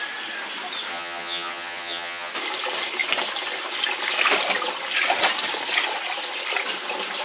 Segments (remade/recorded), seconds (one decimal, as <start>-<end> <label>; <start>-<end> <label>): 0.0-0.9 recorded; 0.9-2.3 remade; 2.3-7.2 recorded